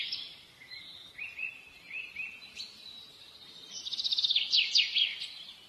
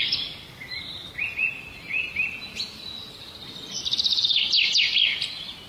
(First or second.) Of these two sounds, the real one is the second